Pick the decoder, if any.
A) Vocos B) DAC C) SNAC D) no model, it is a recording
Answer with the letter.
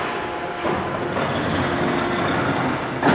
D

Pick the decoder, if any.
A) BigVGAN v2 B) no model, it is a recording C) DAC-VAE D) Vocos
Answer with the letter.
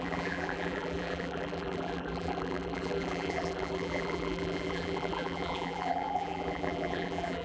A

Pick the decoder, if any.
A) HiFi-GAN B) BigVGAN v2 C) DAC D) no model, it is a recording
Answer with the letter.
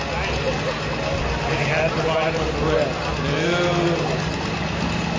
D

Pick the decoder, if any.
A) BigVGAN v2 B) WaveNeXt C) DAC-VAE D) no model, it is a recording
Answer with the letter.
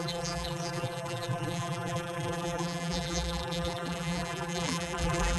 A